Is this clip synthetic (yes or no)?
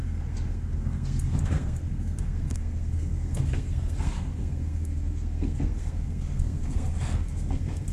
yes